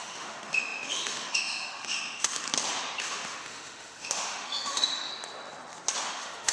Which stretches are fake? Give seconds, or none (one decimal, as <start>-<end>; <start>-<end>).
0.0-2.4; 3.0-5.1; 6.1-6.5